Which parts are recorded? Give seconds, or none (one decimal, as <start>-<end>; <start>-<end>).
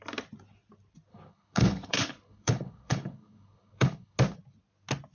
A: 0.0-1.1; 4.2-5.1